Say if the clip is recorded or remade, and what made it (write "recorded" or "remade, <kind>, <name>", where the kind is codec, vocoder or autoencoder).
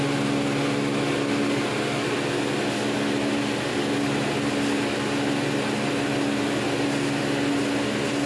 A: recorded